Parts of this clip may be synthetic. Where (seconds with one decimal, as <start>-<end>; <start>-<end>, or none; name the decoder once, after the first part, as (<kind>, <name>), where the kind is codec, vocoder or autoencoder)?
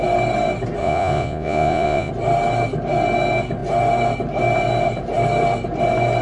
0.8-2.1 (vocoder, Vocos)